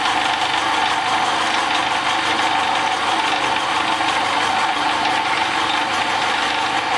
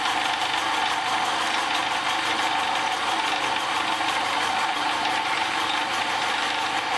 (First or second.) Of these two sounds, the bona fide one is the first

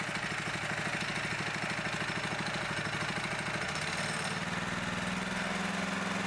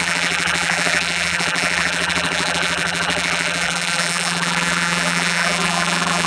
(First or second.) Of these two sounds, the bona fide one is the first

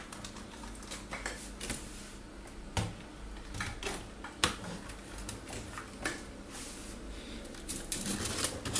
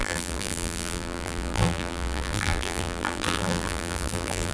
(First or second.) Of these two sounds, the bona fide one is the first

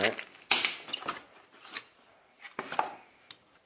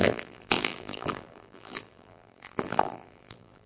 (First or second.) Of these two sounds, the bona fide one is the first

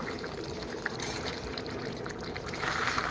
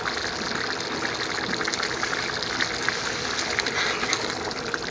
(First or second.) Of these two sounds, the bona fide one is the second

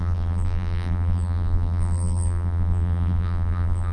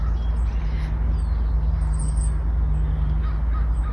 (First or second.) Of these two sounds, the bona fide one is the second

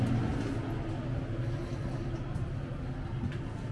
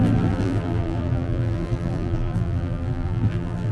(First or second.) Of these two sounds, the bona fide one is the first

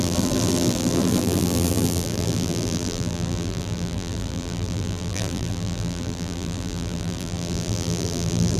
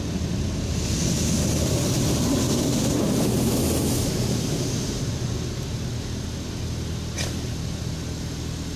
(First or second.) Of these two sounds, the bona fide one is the second